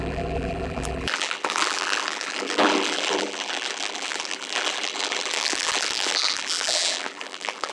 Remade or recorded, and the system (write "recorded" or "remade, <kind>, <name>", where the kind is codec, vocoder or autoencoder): remade, vocoder, BigVGAN v2